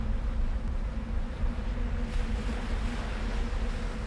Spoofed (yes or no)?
no